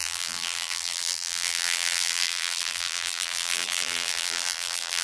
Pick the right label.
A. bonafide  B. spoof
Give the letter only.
B